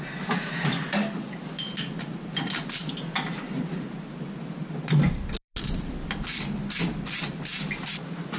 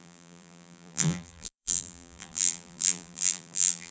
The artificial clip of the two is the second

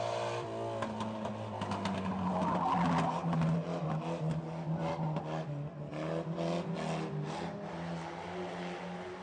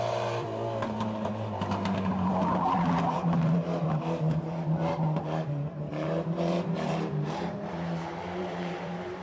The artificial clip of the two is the second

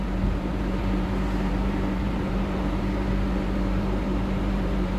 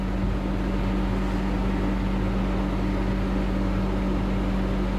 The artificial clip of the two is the first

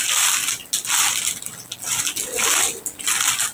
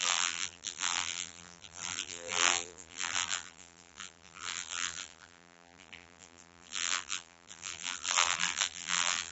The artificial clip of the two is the second